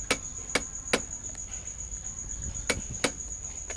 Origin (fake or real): real